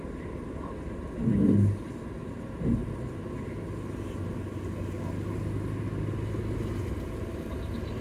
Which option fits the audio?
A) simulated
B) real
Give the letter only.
B